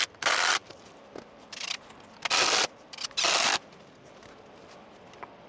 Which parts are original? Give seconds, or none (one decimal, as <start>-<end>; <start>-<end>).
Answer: 0.0-5.5